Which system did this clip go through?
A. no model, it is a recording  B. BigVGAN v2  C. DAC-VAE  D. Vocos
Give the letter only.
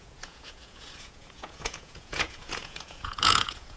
D